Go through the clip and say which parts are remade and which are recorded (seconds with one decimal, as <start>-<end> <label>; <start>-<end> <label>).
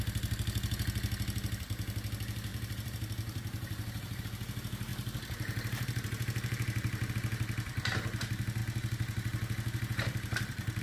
0.0-2.5 recorded; 2.5-4.2 remade; 4.2-4.9 recorded; 4.9-7.1 remade; 7.1-8.6 recorded; 8.6-10.8 remade